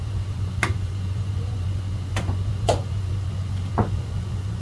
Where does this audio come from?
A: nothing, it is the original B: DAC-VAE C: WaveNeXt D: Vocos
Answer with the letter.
D